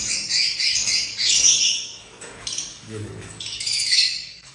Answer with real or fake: fake